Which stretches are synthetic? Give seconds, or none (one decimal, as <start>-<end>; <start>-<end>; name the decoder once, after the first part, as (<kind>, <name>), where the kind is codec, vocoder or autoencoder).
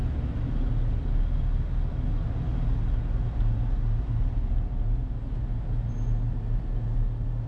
none